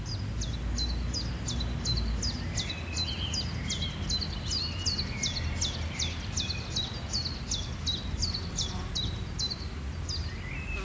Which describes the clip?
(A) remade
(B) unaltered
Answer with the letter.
B